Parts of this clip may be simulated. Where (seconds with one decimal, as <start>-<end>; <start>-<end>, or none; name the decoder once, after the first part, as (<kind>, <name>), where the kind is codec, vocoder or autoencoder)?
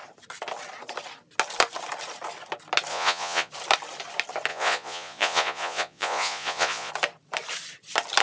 2.9-3.5 (vocoder, Vocos); 4.5-6.9